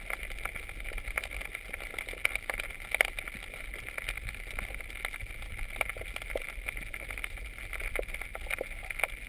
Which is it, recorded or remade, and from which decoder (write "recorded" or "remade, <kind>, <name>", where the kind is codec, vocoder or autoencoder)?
recorded